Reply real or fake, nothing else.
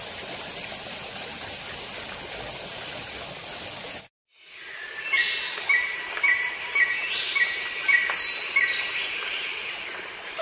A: real